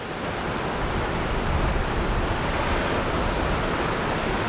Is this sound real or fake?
real